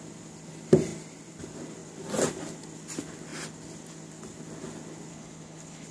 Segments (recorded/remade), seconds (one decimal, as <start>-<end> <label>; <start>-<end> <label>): 0.0-5.1 recorded; 5.1-5.9 remade